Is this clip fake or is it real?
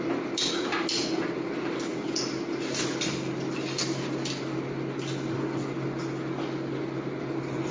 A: real